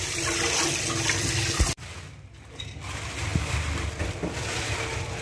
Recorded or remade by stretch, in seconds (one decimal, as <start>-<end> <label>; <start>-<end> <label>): 0.0-5.2 recorded